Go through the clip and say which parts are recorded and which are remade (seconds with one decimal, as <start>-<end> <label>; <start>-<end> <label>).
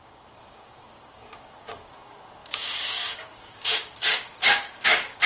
0.0-5.3 remade